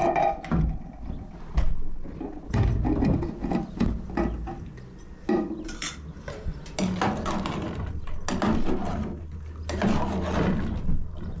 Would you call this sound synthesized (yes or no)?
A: no